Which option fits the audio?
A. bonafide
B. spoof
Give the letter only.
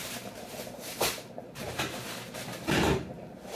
B